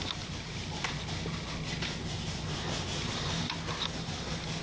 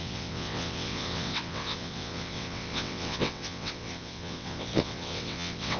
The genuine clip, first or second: first